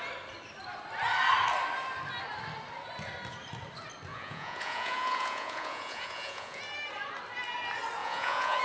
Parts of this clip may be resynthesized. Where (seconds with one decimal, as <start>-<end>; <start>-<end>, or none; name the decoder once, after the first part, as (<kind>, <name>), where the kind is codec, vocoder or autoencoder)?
4.1-6.6 (vocoder, Vocos); 8.0-8.6